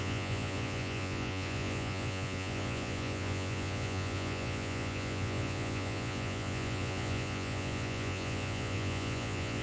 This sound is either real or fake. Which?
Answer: fake